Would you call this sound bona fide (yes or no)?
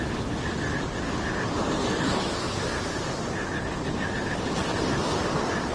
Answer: yes